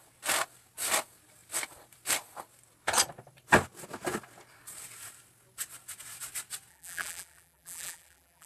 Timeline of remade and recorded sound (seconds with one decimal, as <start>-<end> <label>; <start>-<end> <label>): 0.0-6.7 recorded; 6.7-8.5 remade

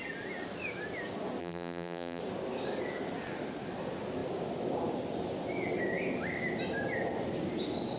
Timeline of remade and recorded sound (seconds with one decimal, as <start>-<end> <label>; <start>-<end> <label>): 0.0-1.4 recorded; 1.4-2.2 remade; 2.2-8.0 recorded

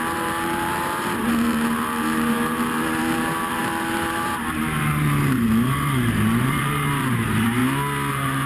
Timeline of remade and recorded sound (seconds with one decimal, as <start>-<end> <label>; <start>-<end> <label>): 0.0-7.6 remade; 7.6-8.1 recorded; 8.1-8.5 remade

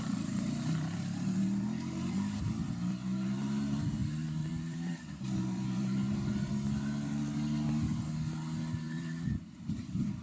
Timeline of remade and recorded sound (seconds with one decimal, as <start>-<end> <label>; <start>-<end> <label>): 0.0-6.5 remade; 6.5-8.8 recorded; 8.8-10.2 remade